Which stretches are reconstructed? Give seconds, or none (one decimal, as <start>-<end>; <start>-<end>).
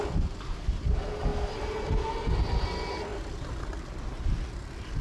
none